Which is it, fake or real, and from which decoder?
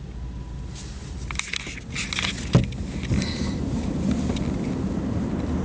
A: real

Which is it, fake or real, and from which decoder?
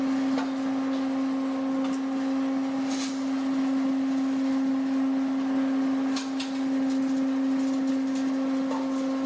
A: real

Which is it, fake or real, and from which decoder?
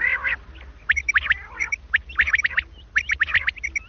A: real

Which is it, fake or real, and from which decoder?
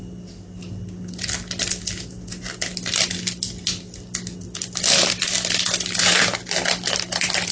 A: real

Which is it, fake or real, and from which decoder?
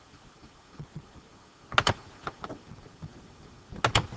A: real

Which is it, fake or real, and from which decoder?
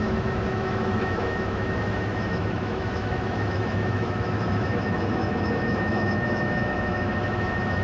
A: fake, autoencoder, DAC-VAE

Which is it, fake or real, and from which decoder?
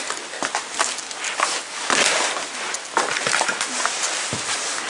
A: real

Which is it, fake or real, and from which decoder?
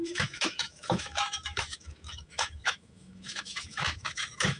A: fake, autoencoder, DAC-VAE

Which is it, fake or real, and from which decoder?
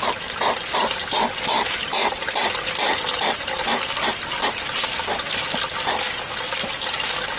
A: real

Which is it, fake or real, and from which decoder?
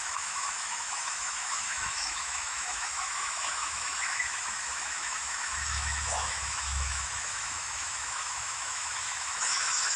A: fake, autoencoder, DAC-VAE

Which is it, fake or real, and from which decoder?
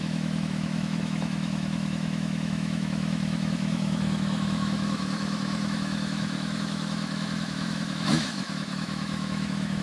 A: fake, autoencoder, DAC-VAE